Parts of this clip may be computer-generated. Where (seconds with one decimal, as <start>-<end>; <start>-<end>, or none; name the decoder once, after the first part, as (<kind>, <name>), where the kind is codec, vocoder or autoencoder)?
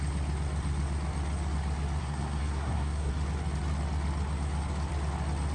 2.0-3.1 (codec, SNAC)